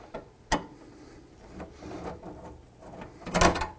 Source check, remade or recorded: recorded